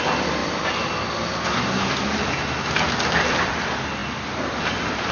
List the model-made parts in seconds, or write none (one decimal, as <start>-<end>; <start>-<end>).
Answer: none